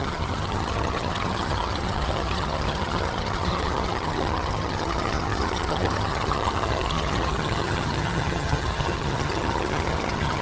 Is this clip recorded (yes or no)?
no